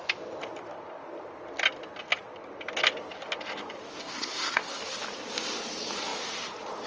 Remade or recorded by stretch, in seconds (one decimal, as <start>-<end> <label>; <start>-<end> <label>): 0.0-4.0 recorded; 4.0-4.8 remade; 4.8-6.9 recorded